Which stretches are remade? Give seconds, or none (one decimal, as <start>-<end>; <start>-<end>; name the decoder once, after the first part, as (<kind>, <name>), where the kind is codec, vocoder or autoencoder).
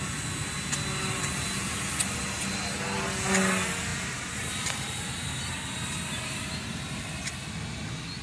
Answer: 3.9-7.0 (vocoder, BigVGAN v2)